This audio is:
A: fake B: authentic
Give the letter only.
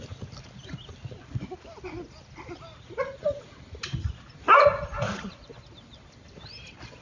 B